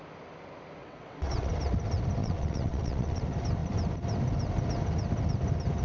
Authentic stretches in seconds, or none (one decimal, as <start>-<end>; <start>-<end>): 0.0-0.8; 1.5-2.2; 3.2-5.8